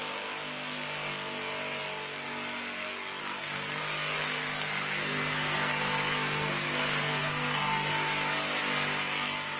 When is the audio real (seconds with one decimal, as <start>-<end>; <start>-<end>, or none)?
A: 0.0-3.2; 3.8-4.2; 7.9-9.6